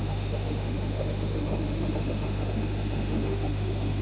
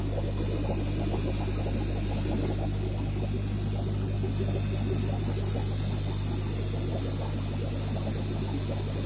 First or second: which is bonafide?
second